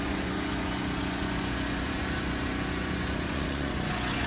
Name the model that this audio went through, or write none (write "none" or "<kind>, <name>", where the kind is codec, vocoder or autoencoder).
vocoder, Vocos